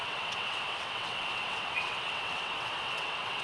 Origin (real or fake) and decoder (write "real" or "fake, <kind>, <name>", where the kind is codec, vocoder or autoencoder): fake, vocoder, WaveNeXt